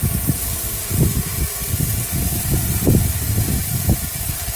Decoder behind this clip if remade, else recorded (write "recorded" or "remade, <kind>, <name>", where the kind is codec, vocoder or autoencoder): recorded